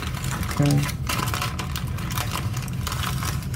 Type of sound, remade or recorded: recorded